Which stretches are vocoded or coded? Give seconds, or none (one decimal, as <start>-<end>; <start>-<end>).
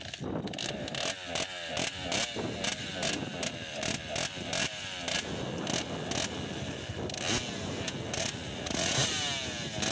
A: 8.2-9.1